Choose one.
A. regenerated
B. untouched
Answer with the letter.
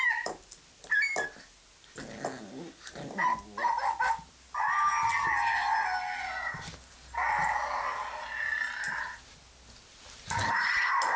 B